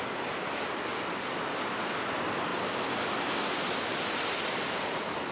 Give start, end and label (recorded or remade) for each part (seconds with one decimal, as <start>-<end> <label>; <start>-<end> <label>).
0.0-5.3 recorded